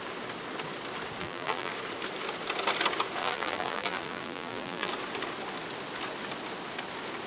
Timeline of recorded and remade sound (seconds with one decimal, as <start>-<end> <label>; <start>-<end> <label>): 0.0-1.2 recorded; 1.2-1.7 remade; 1.7-3.2 recorded; 3.2-4.9 remade; 4.9-7.3 recorded